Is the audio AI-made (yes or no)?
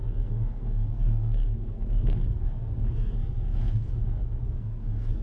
yes